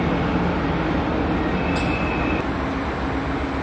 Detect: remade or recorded recorded